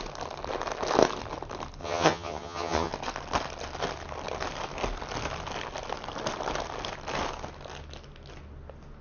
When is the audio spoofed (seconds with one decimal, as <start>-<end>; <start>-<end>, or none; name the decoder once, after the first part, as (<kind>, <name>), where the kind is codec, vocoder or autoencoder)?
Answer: 1.8-2.9 (vocoder, HiFi-GAN)